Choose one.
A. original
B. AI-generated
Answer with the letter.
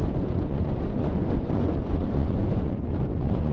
B